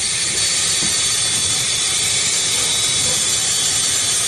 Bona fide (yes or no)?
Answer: yes